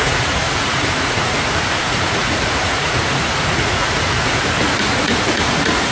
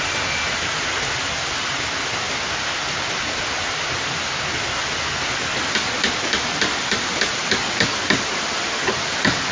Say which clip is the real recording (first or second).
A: second